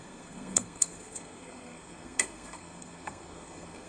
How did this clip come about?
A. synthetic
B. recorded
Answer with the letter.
A